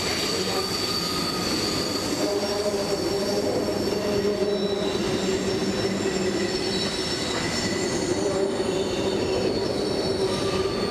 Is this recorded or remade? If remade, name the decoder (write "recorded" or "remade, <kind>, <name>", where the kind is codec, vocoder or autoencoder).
recorded